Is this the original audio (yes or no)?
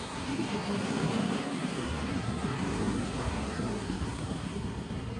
no